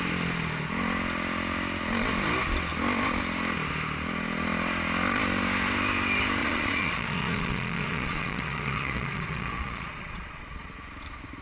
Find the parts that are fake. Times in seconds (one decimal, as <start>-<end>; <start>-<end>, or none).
6.4-10.7